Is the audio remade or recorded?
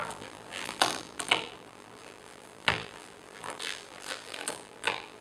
remade